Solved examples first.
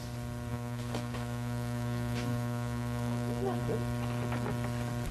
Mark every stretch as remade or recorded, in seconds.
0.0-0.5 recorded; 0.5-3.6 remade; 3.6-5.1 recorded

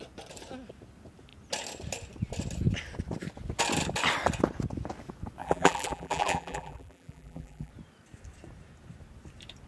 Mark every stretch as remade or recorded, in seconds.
0.0-5.4 recorded; 5.4-7.7 remade; 7.7-9.7 recorded

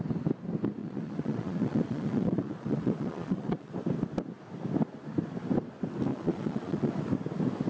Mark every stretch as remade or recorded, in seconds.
0.0-0.8 recorded; 0.8-3.7 remade; 3.7-6.1 recorded; 6.1-6.9 remade; 6.9-7.7 recorded